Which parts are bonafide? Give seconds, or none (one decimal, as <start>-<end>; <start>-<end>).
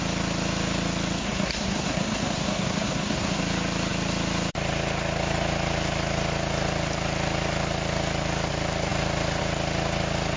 0.0-1.2; 3.4-10.4